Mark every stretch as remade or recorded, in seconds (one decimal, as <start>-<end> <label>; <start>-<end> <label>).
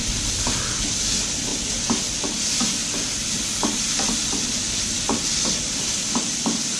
0.0-6.8 recorded